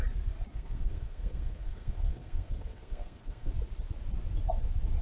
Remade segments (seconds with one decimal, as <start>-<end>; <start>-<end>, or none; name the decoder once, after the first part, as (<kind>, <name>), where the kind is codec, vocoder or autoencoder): 0.5-3.5 (codec, SNAC)